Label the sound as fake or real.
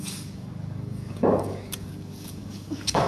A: fake